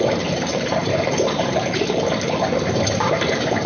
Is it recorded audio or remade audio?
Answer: remade